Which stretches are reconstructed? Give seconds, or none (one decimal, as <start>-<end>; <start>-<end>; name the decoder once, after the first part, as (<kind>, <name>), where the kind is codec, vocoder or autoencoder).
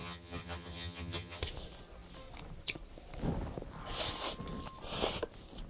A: 0.0-1.4 (vocoder, HiFi-GAN)